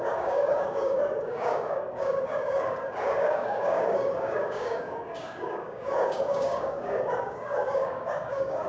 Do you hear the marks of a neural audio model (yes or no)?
yes